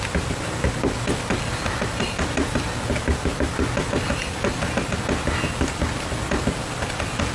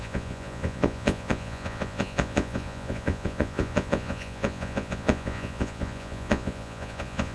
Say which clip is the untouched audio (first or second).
first